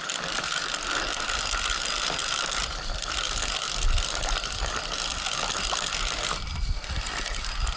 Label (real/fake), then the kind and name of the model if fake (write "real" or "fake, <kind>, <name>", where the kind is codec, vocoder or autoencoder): real